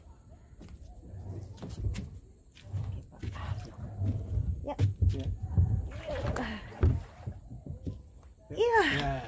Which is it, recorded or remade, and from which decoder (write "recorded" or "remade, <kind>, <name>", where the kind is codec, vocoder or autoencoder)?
recorded